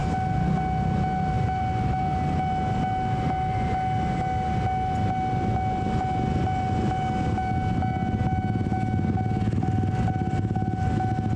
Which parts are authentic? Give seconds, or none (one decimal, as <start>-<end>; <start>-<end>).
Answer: 0.0-11.4